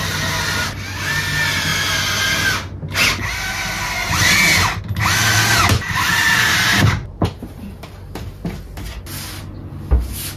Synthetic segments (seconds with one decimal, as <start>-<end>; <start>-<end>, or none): 5.5-7.8

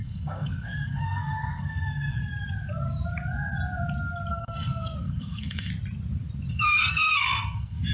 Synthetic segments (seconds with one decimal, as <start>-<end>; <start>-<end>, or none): 0.0-2.2; 4.3-5.7; 6.5-7.9

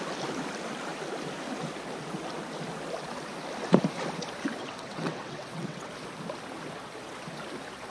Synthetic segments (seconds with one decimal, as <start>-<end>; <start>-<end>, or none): 4.6-5.9

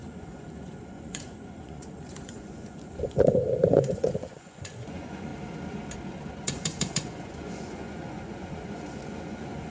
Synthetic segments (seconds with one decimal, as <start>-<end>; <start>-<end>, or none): 0.0-5.3; 6.1-9.7